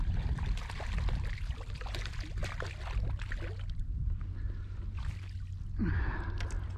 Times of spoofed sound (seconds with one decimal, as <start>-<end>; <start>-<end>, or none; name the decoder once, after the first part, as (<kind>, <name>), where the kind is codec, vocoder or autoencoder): none